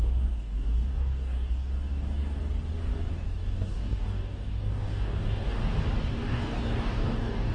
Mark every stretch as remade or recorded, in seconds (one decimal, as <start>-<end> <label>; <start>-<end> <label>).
0.0-2.4 remade; 2.4-3.1 recorded; 3.1-5.6 remade; 5.6-6.1 recorded; 6.1-7.5 remade